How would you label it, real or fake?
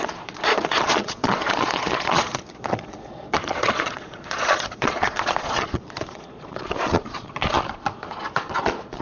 fake